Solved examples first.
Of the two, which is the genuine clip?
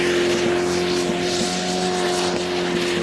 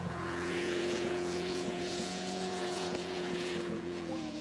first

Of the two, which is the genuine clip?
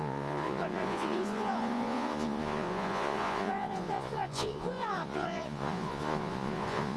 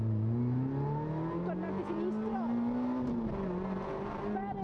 second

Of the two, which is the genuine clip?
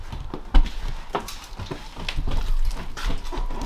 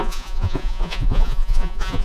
first